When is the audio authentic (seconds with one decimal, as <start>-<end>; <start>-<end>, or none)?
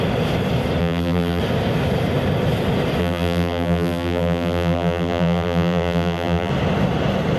0.0-0.8; 1.4-3.0; 6.5-7.4